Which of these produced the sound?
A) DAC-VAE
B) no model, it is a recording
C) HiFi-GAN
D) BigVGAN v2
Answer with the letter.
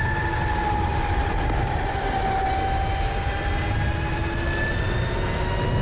B